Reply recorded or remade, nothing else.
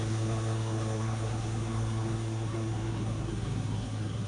remade